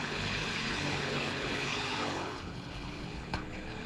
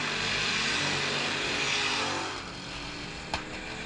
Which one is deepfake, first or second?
first